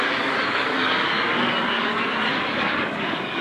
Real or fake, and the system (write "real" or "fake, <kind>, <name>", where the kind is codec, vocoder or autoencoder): fake, codec, DAC